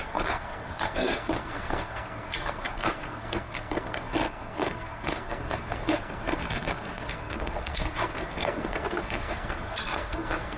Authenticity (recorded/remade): remade